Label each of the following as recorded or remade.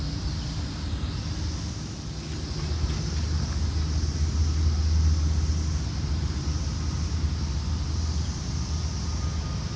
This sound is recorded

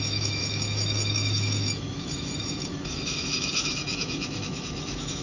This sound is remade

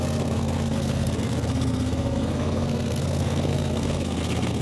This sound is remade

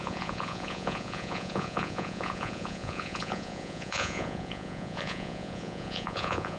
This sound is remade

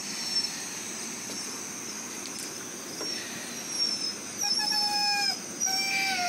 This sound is recorded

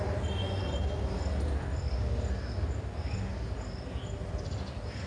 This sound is recorded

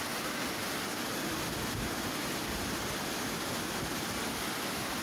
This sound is recorded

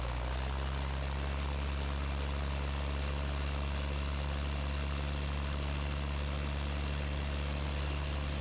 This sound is recorded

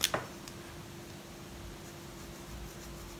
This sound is recorded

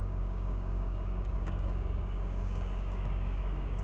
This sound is remade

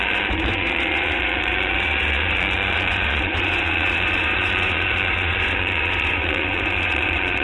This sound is remade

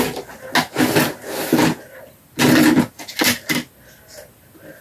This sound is recorded